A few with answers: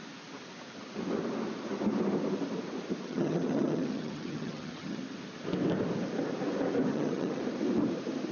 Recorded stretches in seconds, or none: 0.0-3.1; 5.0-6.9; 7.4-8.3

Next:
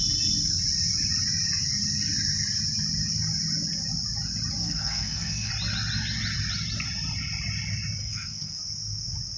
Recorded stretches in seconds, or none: 0.0-4.6; 5.5-8.0; 8.6-9.4

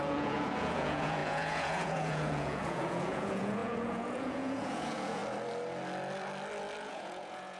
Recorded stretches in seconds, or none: 5.2-6.8

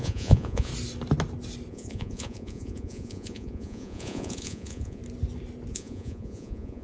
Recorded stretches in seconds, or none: 0.7-1.7; 5.0-5.7

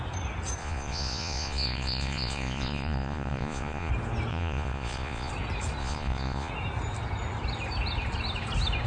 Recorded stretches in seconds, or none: 0.0-0.6; 3.9-4.3; 5.3-5.8; 6.5-8.9

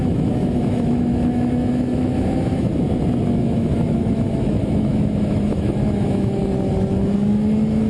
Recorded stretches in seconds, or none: 2.7-3.3; 6.4-7.3

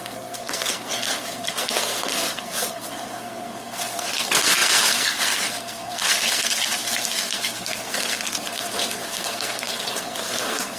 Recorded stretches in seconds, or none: none